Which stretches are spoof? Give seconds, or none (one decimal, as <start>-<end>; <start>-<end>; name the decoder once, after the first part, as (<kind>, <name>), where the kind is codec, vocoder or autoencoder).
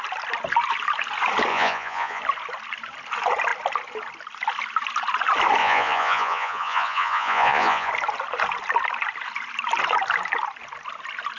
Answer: 1.5-2.2 (vocoder, Vocos); 5.6-7.9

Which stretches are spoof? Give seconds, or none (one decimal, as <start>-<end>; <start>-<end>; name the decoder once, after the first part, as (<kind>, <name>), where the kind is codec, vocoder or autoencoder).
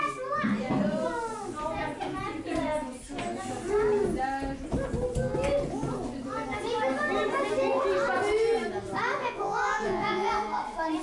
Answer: 9.2-10.3 (vocoder, Vocos)